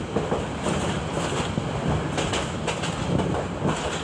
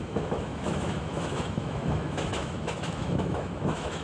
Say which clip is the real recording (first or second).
first